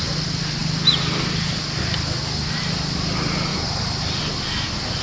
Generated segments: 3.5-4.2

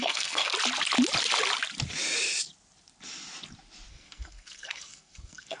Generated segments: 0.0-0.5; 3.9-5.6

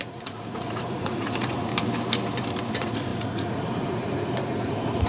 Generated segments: 0.0-1.7; 2.7-5.1